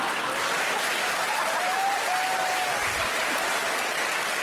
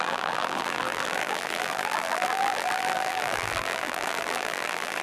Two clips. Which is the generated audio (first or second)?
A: second